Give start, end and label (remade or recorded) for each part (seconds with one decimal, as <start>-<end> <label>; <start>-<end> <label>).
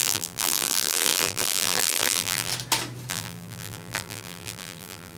0.0-2.5 remade; 2.5-3.1 recorded; 3.1-5.2 remade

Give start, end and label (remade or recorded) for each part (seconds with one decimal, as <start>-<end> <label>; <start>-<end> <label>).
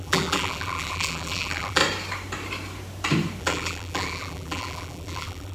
0.0-1.8 remade; 1.8-3.4 recorded; 3.4-5.5 remade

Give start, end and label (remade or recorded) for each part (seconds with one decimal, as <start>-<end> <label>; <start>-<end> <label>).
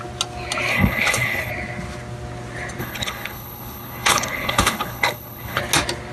0.0-0.7 recorded; 0.7-1.5 remade; 1.5-2.8 recorded; 2.8-5.6 remade; 5.6-6.1 recorded